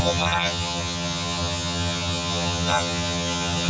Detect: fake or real fake